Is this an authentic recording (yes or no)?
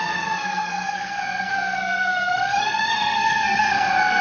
no